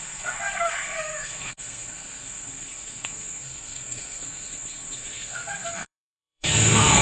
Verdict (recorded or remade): remade